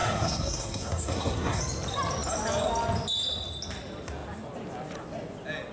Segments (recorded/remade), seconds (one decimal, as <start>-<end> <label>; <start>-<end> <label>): 0.0-1.6 remade; 1.6-5.7 recorded